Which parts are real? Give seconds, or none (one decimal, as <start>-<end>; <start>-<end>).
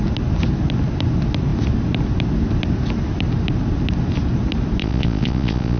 0.0-4.8